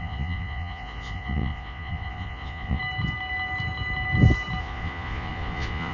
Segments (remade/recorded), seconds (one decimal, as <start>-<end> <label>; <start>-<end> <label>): 0.0-2.8 remade; 2.8-4.6 recorded; 4.6-5.9 remade